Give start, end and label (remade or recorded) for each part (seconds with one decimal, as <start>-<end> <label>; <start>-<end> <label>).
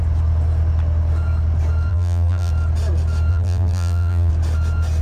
0.0-1.9 recorded; 1.9-2.5 remade; 2.5-3.3 recorded; 3.3-4.3 remade; 4.3-5.0 recorded